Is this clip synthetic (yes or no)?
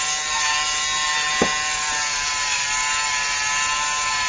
no